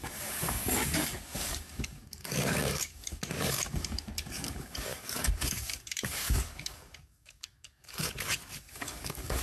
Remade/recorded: remade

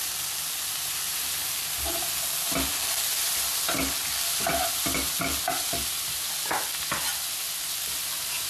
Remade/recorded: recorded